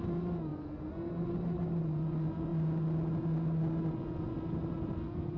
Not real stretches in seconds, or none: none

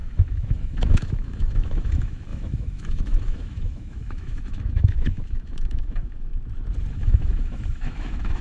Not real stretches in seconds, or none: 0.0-6.3 (autoencoder, DAC-VAE); 6.9-8.4

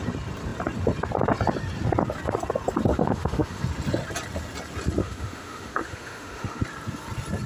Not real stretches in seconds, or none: 2.9-3.6 (autoencoder, DAC-VAE); 5.0-6.6

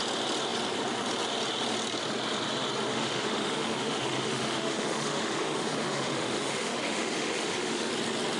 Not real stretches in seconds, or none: 2.9-7.9 (autoencoder, DAC-VAE)

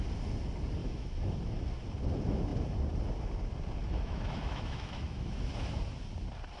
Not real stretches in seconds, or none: 0.8-1.4 (autoencoder, DAC-VAE); 3.8-5.8

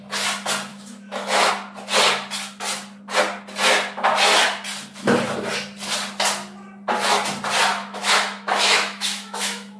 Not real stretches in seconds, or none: 0.7-1.5 (autoencoder, DAC-VAE); 7.7-9.8

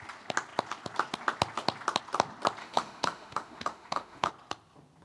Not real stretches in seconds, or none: 2.6-4.3 (autoencoder, DAC-VAE)

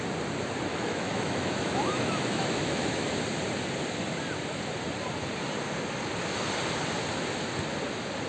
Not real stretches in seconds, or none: 0.7-3.1 (autoencoder, DAC-VAE)